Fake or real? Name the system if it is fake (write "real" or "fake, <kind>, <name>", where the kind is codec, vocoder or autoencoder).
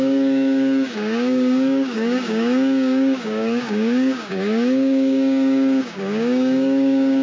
fake, codec, DAC